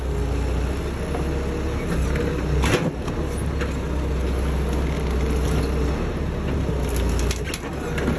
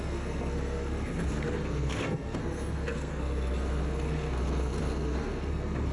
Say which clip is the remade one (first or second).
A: second